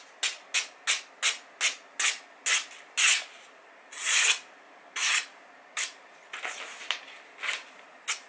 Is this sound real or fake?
real